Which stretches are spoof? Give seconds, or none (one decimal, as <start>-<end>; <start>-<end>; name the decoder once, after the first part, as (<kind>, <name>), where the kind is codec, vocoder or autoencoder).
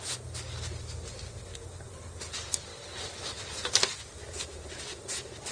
none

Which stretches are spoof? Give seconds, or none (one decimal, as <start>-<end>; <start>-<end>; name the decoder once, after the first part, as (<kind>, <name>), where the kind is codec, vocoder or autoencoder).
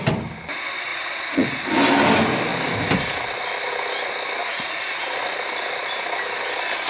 0.9-1.5 (vocoder, Vocos); 4.4-5.2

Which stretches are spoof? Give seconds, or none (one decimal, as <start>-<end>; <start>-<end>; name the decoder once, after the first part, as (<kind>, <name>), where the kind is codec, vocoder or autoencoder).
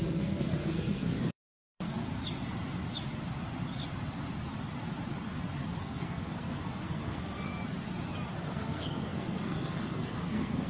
0.0-2.0 (codec, SNAC); 5.8-7.5; 8.3-10.7